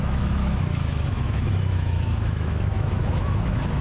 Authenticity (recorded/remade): remade